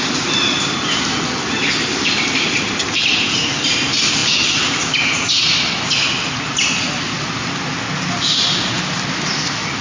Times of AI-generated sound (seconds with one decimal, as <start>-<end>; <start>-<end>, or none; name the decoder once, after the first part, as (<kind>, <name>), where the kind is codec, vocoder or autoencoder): none